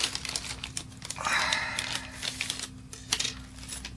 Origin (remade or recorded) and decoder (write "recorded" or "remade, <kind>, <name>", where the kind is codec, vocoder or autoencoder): recorded